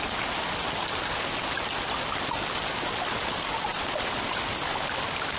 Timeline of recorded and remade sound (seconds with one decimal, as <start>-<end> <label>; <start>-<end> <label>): 0.0-5.4 recorded